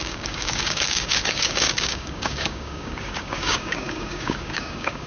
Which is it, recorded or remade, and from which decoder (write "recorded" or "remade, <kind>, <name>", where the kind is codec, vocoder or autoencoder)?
remade, codec, DAC